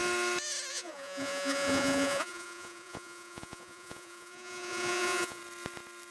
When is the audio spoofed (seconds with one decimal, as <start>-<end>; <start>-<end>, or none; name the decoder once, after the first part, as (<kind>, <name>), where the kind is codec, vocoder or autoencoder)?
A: 0.7-5.4 (vocoder, Vocos)